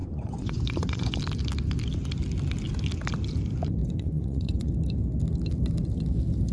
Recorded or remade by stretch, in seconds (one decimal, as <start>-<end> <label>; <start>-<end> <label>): 0.0-1.2 remade; 1.2-3.8 recorded; 3.8-4.7 remade; 4.7-6.5 recorded

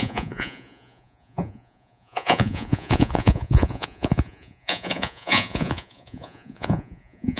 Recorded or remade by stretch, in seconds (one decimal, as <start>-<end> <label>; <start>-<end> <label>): 0.0-7.4 remade

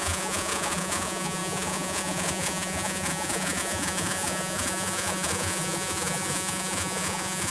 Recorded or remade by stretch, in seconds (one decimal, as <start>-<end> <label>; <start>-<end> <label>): 0.0-7.5 remade

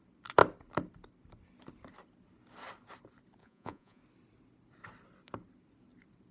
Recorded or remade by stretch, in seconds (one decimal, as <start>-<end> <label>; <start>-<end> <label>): 0.0-3.4 recorded; 3.4-4.0 remade; 4.0-6.3 recorded

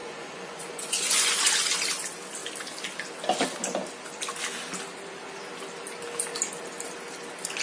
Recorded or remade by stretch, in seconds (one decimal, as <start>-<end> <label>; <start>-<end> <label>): 0.0-1.5 remade; 1.5-7.6 recorded